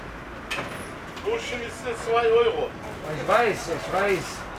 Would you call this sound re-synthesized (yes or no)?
no